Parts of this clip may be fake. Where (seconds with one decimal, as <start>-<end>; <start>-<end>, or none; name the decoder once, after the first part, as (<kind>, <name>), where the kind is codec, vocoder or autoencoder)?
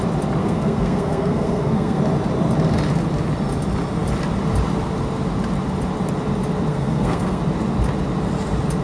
0.4-2.0 (codec, SNAC); 6.7-7.4